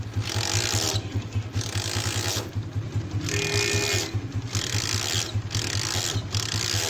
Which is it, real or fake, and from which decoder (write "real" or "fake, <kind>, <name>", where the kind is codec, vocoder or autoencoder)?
real